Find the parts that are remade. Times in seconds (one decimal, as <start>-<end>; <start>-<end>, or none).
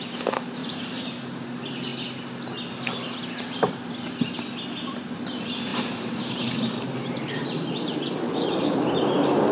0.6-1.2; 5.7-7.4